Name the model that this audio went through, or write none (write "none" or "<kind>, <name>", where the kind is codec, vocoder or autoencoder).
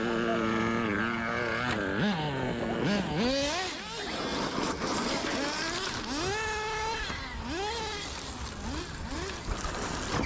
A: none